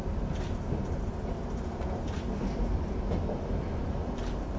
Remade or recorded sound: recorded